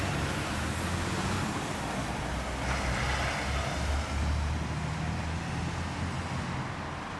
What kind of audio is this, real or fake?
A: real